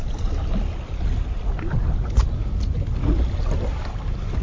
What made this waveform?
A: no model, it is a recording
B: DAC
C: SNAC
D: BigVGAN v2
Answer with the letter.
A